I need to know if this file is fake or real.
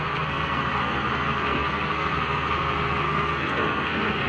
fake